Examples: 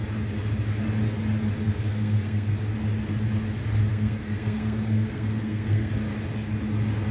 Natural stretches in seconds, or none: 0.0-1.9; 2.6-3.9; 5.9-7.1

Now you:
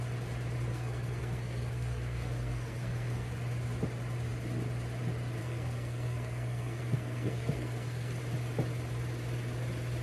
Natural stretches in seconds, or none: 0.0-0.7; 3.3-5.4; 8.2-10.0

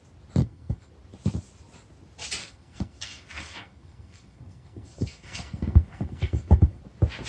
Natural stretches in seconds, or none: 0.0-0.4; 0.9-2.4; 6.8-7.3

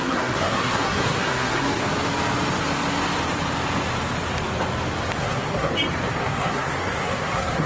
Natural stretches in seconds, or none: 1.8-5.2; 5.7-6.2

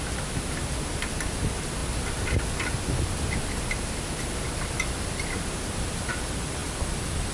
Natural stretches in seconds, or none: 0.0-7.3

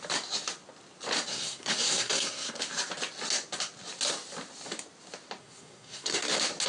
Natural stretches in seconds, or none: 0.0-1.3; 2.6-5.4; 6.3-6.7

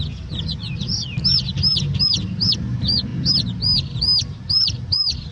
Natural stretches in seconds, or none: 0.0-5.3

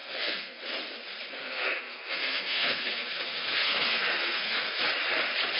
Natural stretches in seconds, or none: 0.6-1.4; 4.8-5.6